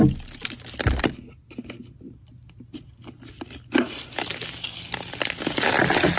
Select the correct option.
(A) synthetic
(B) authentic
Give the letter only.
B